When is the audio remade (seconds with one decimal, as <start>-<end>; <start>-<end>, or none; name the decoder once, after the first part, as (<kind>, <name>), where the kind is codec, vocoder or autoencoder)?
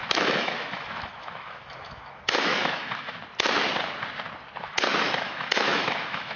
0.0-3.2 (autoencoder, DAC-VAE); 4.6-6.4